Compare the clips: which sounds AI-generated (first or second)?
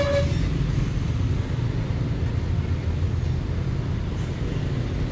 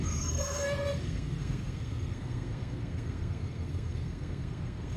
second